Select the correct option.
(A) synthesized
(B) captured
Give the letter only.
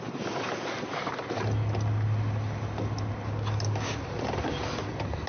B